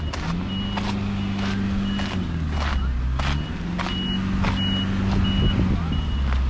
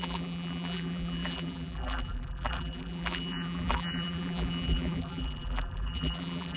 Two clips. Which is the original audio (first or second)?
first